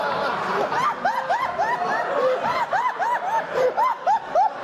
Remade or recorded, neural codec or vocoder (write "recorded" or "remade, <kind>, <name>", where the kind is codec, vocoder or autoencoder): recorded